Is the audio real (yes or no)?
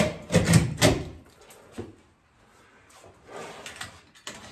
yes